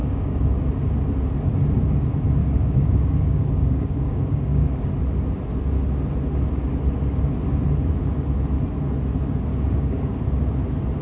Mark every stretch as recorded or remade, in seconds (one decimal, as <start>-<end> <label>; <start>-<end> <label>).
0.0-0.6 remade; 0.6-2.4 recorded; 2.4-4.8 remade; 4.8-9.5 recorded; 9.5-10.2 remade; 10.2-11.0 recorded